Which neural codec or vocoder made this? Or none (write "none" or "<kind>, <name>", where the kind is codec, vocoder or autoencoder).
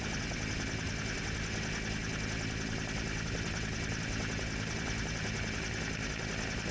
none